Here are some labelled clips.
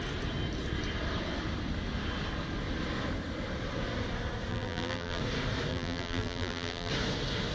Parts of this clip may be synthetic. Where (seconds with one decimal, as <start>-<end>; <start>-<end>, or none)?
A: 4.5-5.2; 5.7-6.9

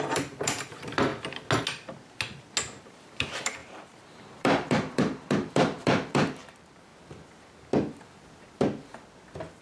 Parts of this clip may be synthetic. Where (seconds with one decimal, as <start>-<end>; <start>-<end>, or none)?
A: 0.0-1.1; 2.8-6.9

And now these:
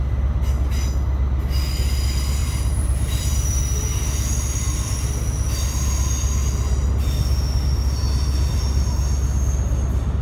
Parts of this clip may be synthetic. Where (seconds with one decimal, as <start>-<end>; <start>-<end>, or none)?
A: 2.4-3.6